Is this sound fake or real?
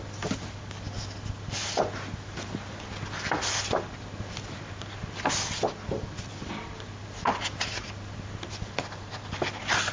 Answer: real